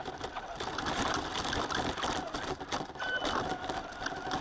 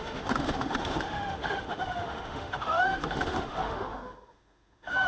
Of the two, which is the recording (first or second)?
first